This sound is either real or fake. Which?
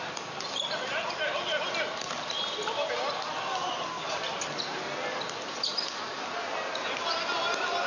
real